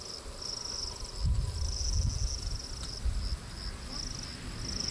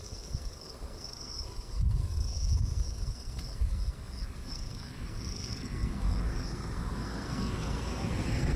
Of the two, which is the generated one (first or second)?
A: second